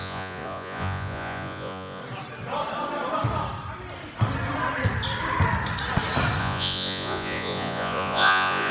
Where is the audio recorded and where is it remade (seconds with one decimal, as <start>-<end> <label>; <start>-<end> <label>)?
0.0-2.0 remade; 2.0-6.4 recorded; 6.4-8.7 remade